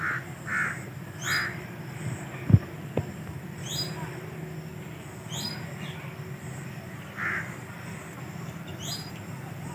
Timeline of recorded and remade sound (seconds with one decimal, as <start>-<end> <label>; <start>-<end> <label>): 0.0-8.7 recorded; 8.7-9.7 remade

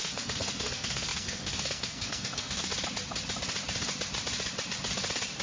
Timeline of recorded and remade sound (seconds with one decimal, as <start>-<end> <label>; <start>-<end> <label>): 0.0-2.7 remade; 2.7-5.4 recorded

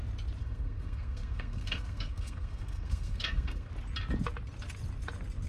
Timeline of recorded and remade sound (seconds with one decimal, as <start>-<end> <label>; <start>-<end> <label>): 0.0-0.4 recorded; 0.4-3.7 remade; 3.7-5.5 recorded

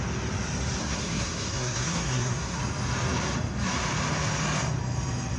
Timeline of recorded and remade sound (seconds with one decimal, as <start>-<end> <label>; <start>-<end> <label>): 0.0-0.8 recorded; 0.8-2.6 remade; 2.6-5.4 recorded

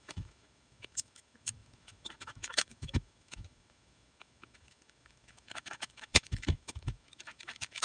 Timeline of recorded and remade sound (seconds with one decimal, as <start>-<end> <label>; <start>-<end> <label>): 0.0-7.8 remade

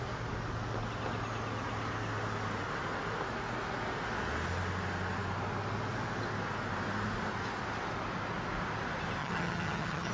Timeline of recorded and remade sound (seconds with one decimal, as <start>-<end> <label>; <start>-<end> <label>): 0.0-9.2 recorded; 9.2-10.1 remade

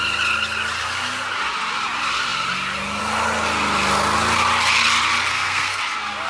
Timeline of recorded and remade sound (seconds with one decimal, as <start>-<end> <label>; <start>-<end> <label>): 0.0-5.3 recorded; 5.3-5.8 remade; 5.8-6.3 recorded